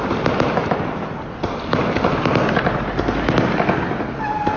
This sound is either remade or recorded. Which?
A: recorded